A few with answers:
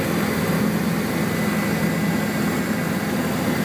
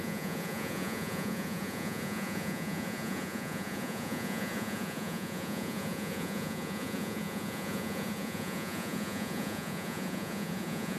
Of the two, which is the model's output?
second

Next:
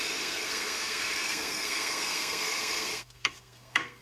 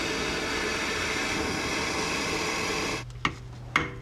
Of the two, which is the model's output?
first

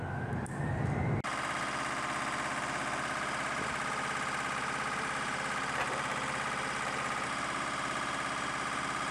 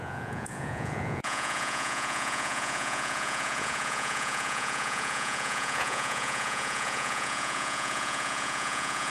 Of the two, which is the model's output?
second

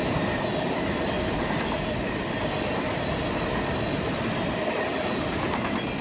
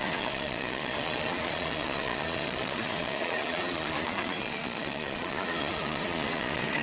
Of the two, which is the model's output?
second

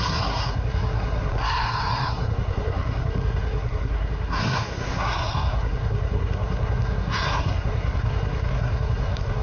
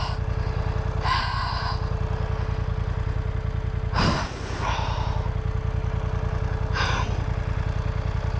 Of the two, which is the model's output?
first